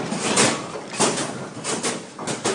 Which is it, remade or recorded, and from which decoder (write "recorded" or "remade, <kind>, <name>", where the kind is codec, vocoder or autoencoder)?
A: recorded